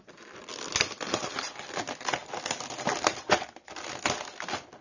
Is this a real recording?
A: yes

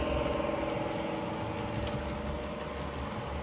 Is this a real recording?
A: yes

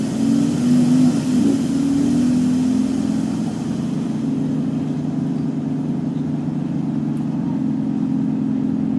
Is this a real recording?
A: yes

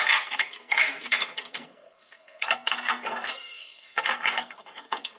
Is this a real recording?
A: no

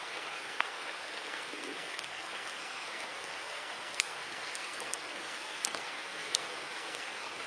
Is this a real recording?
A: no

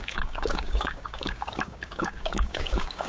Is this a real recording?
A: no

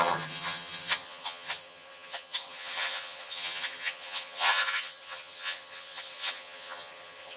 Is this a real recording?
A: no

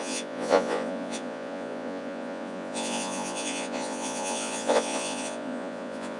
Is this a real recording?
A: no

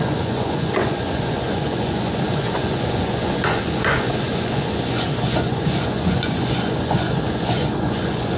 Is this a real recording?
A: no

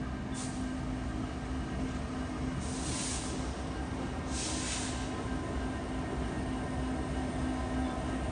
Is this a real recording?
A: yes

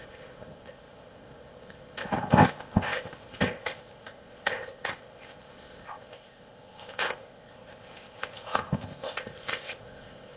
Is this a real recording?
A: no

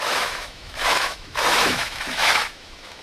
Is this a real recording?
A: no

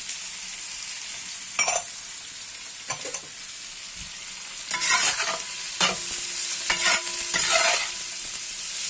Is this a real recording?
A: yes